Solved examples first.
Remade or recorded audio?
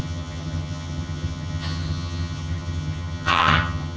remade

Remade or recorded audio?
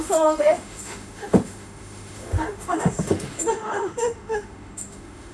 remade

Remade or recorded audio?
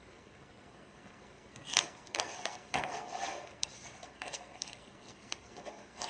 remade